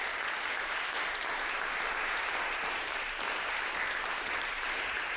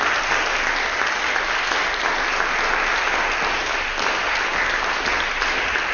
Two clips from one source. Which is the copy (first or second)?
first